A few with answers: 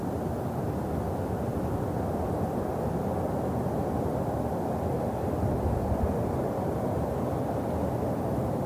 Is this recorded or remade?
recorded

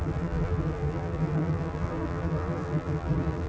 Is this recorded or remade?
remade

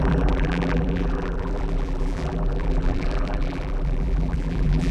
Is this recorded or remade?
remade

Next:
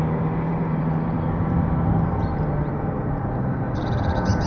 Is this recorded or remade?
remade